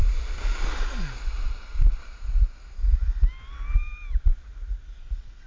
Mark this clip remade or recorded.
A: recorded